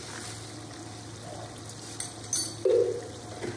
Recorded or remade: recorded